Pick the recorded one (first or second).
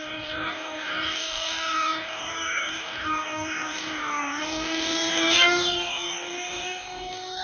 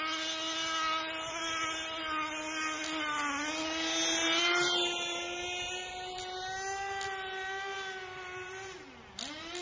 second